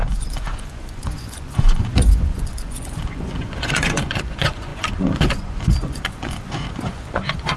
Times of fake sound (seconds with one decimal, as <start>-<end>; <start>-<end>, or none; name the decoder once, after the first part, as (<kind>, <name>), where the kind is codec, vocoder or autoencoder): 0.0-7.6 (vocoder, Vocos)